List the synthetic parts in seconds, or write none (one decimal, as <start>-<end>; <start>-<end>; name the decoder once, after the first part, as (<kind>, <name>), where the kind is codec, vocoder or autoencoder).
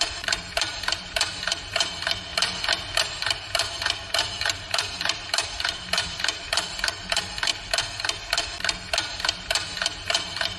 0.0-2.3 (vocoder, BigVGAN v2); 3.0-7.5; 9.4-10.6